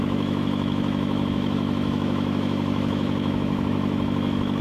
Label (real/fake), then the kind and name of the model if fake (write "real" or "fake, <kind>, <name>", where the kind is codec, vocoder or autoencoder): fake, autoencoder, DAC-VAE